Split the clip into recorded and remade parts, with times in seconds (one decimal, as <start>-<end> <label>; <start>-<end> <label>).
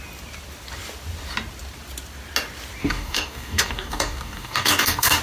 0.0-2.8 recorded; 2.8-5.2 remade